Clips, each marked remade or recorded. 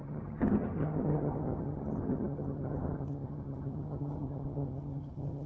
remade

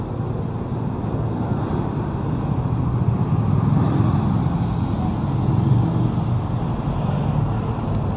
recorded